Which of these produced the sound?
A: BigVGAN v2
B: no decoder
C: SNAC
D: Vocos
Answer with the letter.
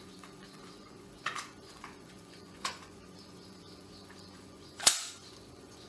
D